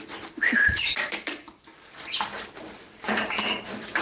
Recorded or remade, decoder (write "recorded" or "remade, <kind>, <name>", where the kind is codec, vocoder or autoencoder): recorded